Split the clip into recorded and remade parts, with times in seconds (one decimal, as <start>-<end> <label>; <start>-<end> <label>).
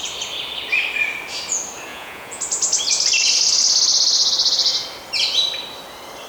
0.0-1.9 recorded; 1.9-2.4 remade; 2.4-6.3 recorded